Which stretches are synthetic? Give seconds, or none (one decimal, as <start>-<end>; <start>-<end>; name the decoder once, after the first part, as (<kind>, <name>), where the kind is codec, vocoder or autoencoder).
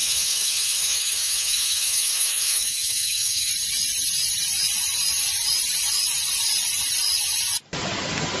0.0-3.5 (autoencoder, DAC-VAE)